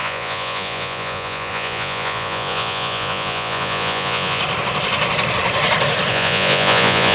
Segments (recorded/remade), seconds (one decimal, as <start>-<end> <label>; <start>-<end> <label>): 0.0-4.4 remade; 4.4-6.1 recorded; 6.1-7.1 remade